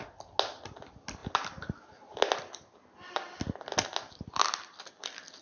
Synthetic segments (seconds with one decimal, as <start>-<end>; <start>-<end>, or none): none